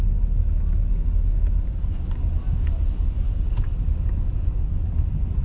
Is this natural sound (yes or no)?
yes